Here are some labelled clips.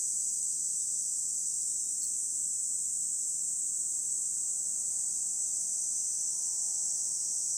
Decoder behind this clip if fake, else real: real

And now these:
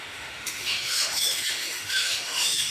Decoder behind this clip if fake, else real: fake, autoencoder, DAC-VAE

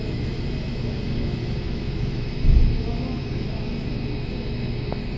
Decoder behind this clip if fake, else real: fake, autoencoder, DAC-VAE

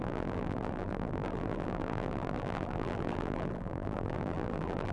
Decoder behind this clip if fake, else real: fake, vocoder, BigVGAN v2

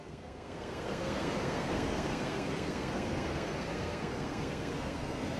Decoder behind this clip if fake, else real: fake, codec, SNAC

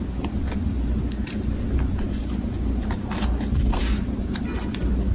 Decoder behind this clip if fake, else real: real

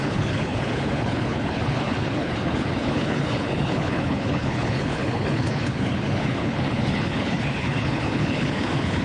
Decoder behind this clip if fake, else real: fake, codec, HILCodec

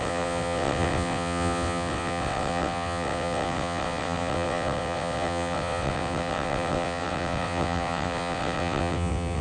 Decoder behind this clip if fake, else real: fake, vocoder, WaveNeXt